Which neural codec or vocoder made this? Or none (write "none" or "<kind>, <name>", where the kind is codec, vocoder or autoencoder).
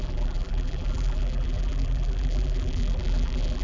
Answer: vocoder, BigVGAN v2